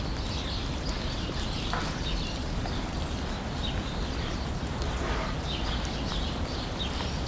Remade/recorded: recorded